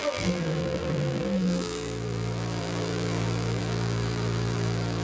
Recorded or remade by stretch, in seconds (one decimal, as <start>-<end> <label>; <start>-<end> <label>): 0.0-5.0 remade